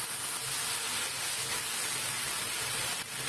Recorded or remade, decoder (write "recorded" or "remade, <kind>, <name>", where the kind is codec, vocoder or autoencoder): recorded